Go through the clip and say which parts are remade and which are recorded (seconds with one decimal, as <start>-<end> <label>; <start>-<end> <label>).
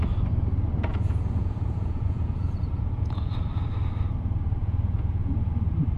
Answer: 0.0-0.9 recorded; 0.9-3.3 remade; 3.3-4.6 recorded; 4.6-5.5 remade; 5.5-6.0 recorded